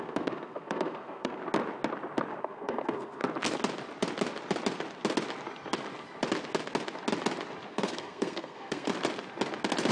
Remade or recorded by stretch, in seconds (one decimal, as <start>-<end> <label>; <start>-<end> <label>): 0.0-1.4 remade; 1.4-2.4 recorded; 2.4-3.2 remade; 3.2-7.7 recorded; 7.7-8.9 remade; 8.9-9.9 recorded